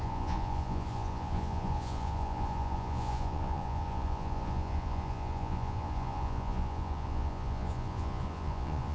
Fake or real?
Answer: fake